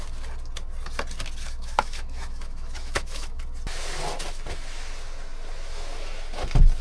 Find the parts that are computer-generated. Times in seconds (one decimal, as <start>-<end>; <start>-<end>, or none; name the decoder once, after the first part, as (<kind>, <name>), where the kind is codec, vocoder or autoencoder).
1.6-3.4 (autoencoder, DAC-VAE)